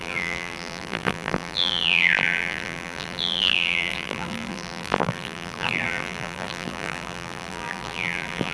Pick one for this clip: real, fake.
fake